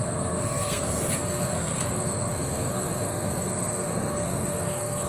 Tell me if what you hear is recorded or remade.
remade